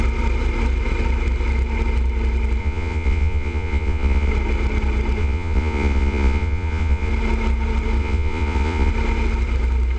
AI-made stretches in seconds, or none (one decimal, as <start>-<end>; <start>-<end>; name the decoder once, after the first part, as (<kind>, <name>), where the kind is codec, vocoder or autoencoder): 2.6-4.3 (vocoder, Vocos); 5.2-7.1; 8.0-8.9